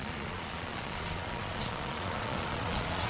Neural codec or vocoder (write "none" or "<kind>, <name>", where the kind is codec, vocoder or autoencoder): vocoder, Vocos